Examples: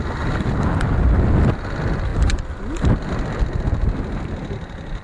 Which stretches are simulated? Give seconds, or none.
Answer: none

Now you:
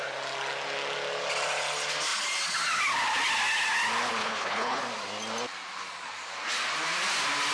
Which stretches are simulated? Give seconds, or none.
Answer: 4.2-4.8 (codec, HILCodec)

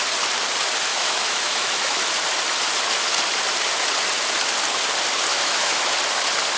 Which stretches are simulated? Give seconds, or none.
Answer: 0.9-2.1 (autoencoder, DAC-VAE); 5.3-5.9

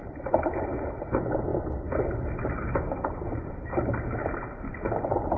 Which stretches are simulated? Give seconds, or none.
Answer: none

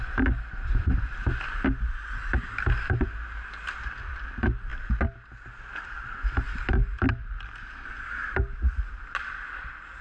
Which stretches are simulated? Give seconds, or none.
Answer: none